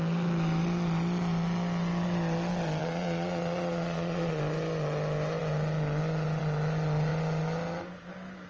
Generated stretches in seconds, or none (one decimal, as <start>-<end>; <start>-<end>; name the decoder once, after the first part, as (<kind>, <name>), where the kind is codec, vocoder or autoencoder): 2.8-4.4 (vocoder, Vocos)